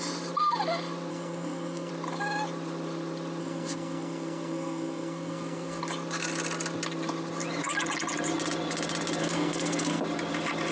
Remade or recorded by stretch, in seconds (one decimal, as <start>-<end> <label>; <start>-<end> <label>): 0.0-1.1 recorded; 1.1-1.9 remade; 1.9-3.4 recorded; 3.4-5.8 remade; 5.8-9.2 recorded; 9.2-10.0 remade; 10.0-10.7 recorded